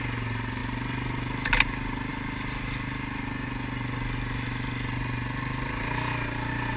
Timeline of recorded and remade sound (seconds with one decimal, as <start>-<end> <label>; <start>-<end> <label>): 0.0-6.8 recorded